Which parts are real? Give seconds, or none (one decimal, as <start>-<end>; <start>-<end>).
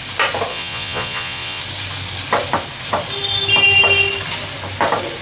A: 0.0-0.5; 1.6-5.2